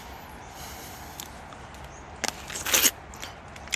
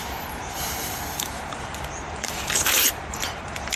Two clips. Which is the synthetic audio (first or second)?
second